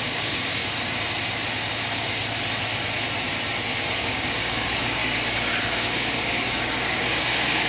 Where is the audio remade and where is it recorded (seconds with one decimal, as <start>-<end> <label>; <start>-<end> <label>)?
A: 0.0-0.6 remade; 0.6-4.0 recorded; 4.0-7.7 remade